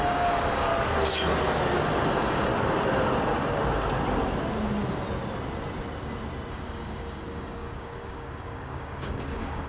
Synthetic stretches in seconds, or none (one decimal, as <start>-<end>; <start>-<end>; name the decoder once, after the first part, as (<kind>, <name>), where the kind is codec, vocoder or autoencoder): 0.0-0.7 (codec, DAC); 2.1-2.5; 6.5-9.7